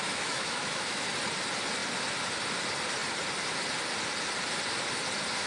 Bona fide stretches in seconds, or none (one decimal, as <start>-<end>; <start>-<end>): 1.1-5.5